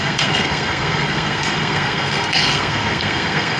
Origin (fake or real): fake